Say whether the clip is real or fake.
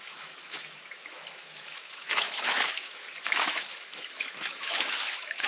fake